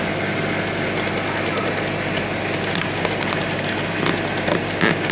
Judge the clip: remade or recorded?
recorded